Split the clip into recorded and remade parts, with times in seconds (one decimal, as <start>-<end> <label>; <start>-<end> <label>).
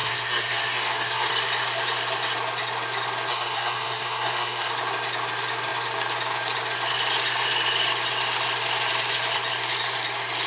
0.0-1.3 remade; 1.3-3.3 recorded; 3.3-4.7 remade; 4.7-10.5 recorded